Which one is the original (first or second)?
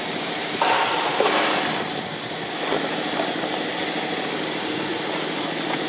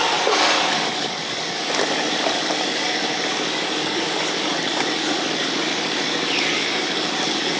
first